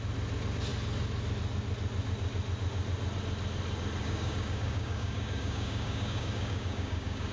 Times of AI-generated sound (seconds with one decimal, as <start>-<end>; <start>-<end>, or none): 4.0-7.3